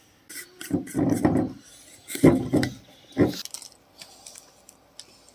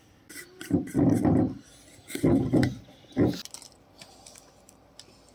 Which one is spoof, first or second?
second